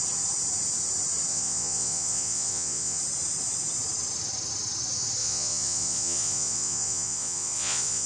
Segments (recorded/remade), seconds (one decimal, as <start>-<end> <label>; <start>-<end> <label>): 0.0-1.3 recorded; 1.3-3.0 remade; 3.0-5.2 recorded; 5.2-8.1 remade